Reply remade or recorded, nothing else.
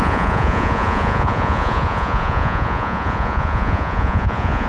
remade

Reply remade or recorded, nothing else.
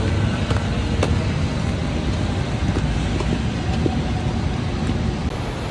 recorded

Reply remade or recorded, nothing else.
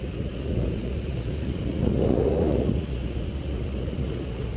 remade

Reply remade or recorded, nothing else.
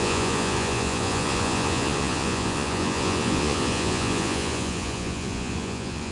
remade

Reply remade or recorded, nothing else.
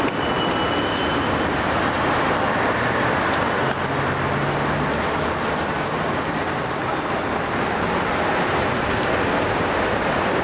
recorded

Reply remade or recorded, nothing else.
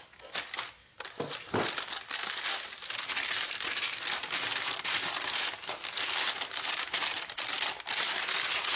recorded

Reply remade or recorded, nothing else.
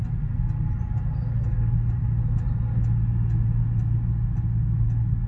recorded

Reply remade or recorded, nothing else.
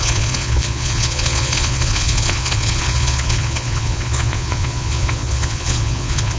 remade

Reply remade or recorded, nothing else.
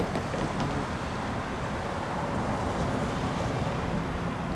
recorded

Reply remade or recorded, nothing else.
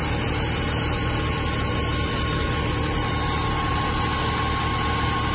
recorded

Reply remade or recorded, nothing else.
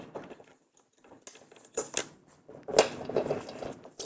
recorded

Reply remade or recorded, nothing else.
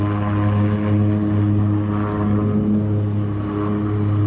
recorded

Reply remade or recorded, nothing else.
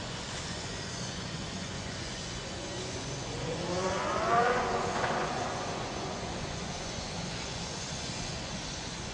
remade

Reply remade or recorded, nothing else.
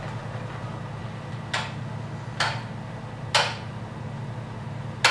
recorded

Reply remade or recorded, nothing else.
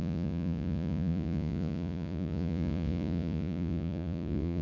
remade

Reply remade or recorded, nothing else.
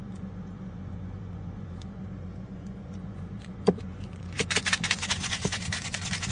remade